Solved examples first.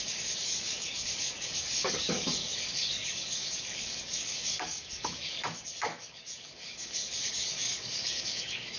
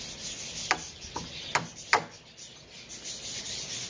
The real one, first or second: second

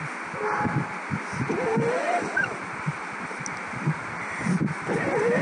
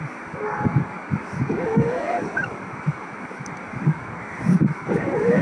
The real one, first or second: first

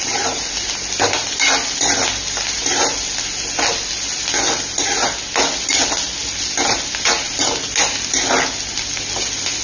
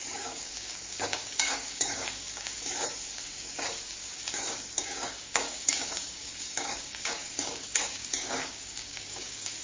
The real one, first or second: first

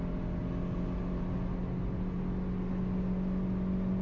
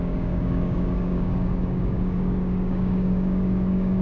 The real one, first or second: first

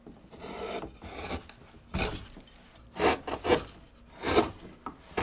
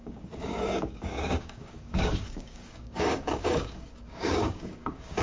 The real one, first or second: first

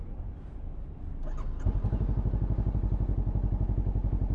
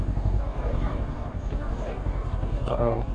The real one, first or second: first